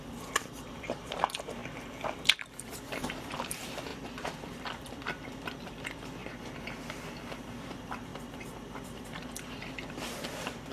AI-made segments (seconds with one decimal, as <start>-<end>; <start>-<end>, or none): 0.0-1.6; 2.2-6.2; 7.5-8.1; 8.6-10.7

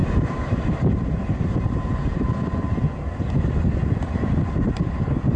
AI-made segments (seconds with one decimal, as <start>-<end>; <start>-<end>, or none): 0.0-2.1

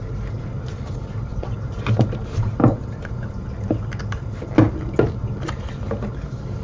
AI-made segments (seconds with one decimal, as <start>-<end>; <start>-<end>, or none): 1.3-3.3

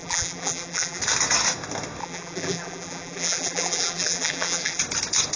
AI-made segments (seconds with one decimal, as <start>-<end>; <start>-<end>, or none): 0.0-1.0; 2.0-4.8

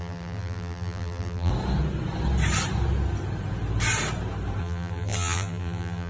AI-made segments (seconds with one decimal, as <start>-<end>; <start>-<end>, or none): 0.0-1.5; 4.6-6.1

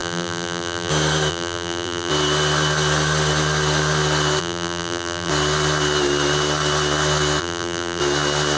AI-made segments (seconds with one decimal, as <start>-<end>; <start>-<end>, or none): 0.0-0.9; 1.3-2.1; 4.4-5.3; 7.4-8.0

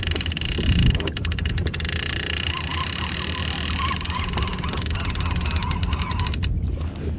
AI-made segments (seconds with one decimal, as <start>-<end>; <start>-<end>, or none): 0.8-1.5; 2.7-3.4

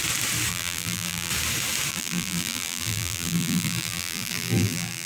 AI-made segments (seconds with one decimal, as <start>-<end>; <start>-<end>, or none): 0.5-1.3; 1.9-5.1